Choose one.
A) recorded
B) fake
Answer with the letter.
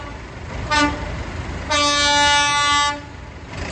A